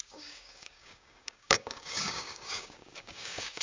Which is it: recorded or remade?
remade